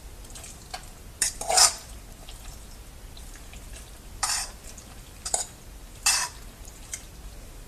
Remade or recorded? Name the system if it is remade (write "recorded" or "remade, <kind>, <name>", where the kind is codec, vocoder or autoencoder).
remade, vocoder, BigVGAN v2